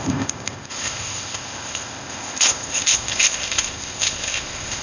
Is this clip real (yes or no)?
no